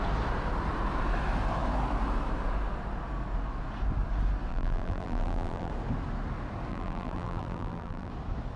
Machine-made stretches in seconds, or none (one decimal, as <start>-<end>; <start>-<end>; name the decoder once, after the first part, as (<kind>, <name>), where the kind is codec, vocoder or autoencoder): 4.5-5.7 (vocoder, BigVGAN v2); 6.7-8.1

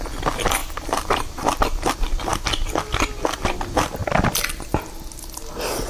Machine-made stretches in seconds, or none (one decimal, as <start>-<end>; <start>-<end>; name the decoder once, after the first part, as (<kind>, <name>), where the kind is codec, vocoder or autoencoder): 0.6-1.6 (vocoder, BigVGAN v2)

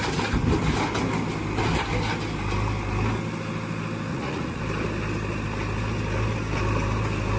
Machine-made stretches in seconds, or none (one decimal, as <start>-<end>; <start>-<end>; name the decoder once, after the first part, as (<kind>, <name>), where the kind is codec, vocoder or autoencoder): 4.1-4.6 (vocoder, Vocos)

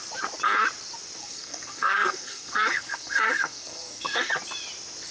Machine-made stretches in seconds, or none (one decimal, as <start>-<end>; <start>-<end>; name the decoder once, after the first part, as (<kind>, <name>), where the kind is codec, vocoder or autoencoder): 1.2-4.3 (codec, SNAC)

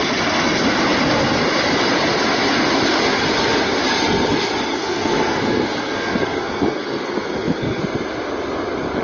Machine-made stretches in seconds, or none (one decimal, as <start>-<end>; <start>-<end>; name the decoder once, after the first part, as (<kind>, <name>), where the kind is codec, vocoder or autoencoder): 4.7-7.8 (codec, SNAC)

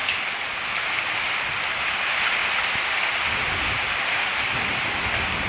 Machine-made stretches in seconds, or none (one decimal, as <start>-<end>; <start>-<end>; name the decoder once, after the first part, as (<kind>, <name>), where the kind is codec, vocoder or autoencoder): none